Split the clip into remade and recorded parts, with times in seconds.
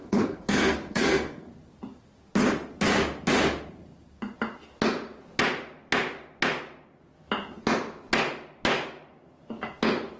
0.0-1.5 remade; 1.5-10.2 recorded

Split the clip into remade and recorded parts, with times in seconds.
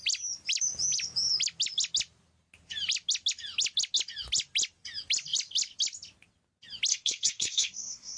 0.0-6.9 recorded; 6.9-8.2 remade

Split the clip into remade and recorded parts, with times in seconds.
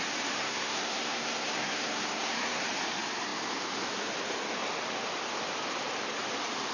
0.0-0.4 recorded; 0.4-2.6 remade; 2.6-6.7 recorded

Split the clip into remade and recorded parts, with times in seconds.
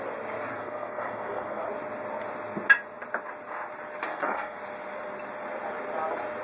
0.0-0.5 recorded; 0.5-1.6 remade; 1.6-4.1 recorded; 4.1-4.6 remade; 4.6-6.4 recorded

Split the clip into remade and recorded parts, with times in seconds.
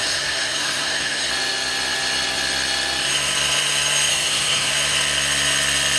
0.0-1.3 remade; 1.3-4.1 recorded; 4.1-4.7 remade; 4.7-6.0 recorded